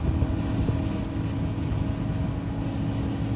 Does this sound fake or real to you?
real